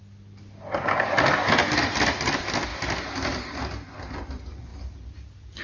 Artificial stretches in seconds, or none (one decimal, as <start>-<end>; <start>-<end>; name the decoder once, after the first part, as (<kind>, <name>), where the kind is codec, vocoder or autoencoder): none